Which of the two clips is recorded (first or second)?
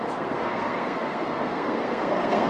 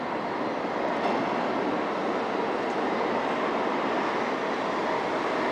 second